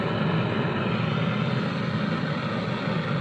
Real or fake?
real